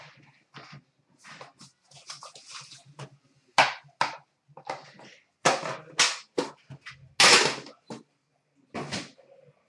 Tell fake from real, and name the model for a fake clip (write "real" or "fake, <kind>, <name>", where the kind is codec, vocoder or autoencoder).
real